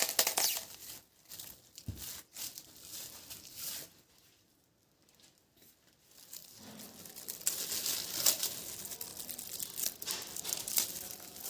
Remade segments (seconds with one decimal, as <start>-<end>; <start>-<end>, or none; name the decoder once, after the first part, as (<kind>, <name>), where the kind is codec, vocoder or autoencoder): none